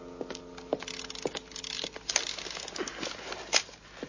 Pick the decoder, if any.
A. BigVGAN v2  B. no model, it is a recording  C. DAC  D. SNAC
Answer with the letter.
B